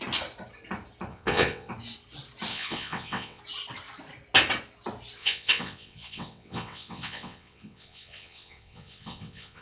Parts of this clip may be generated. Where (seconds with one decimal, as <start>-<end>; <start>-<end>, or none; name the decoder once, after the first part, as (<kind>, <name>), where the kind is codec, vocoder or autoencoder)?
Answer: 1.1-1.7 (vocoder, WaveNeXt); 2.5-3.4; 5.2-9.6